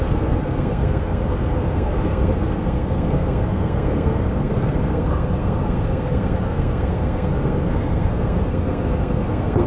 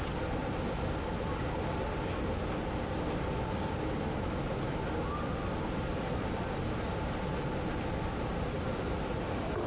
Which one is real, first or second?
second